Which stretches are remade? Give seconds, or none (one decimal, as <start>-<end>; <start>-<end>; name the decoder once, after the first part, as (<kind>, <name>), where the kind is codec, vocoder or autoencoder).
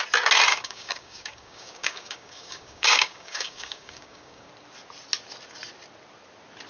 0.5-4.5 (codec, DAC)